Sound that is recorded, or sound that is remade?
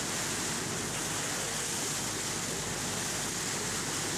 recorded